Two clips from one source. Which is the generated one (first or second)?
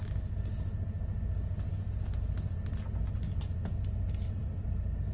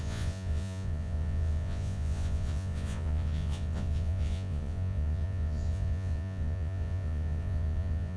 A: second